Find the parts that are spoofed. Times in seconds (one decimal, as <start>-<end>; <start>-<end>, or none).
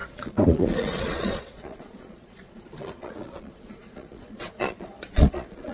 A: 0.0-5.7